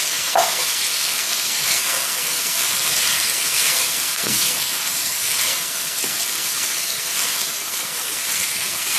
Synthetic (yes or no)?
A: yes